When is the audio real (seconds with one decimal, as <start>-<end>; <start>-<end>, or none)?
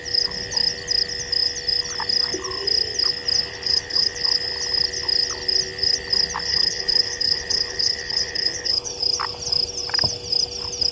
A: 0.0-3.5; 4.2-6.5; 9.0-10.9